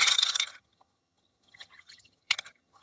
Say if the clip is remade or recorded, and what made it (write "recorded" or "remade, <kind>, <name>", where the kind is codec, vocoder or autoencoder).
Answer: remade, vocoder, HiFi-GAN